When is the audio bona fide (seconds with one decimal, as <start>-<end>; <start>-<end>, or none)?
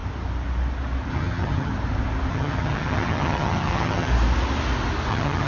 0.0-1.1; 1.7-2.3; 4.1-5.1